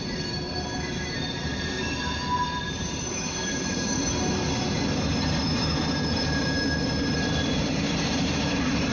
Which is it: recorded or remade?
remade